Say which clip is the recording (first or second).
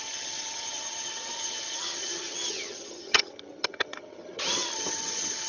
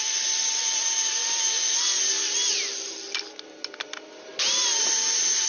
second